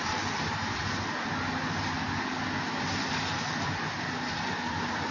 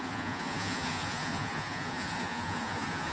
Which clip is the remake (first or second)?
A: second